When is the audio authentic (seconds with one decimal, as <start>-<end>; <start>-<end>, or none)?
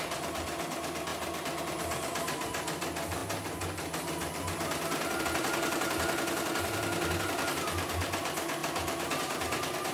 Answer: 3.2-5.2